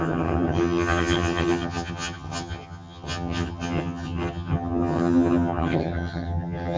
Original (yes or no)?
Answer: no